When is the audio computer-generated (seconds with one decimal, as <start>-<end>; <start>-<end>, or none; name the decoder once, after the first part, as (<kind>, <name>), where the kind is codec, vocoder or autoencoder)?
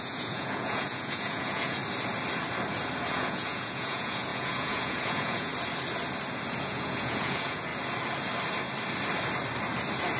0.0-1.8 (vocoder, Vocos); 3.1-5.5; 6.6-7.7